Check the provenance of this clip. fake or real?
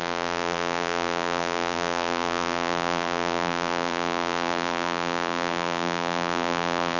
fake